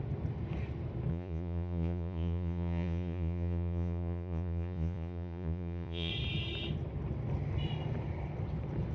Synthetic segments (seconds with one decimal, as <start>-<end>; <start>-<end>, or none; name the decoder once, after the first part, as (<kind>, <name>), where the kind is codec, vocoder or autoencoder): 1.1-6.1 (vocoder, Vocos)